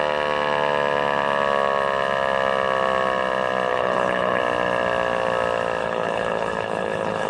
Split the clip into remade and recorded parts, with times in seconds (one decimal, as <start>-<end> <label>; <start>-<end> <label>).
0.0-3.7 recorded; 3.7-4.4 remade; 4.4-5.8 recorded; 5.8-7.3 remade